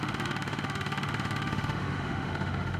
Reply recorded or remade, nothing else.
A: remade